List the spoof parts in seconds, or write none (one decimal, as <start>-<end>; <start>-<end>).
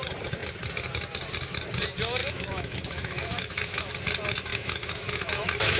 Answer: 2.2-3.9; 4.5-5.8